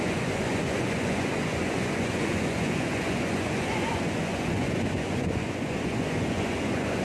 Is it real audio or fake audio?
fake